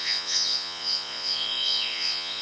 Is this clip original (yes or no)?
no